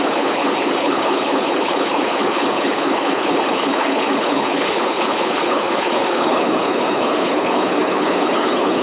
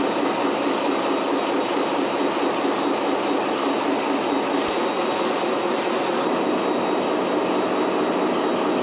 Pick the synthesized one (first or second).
first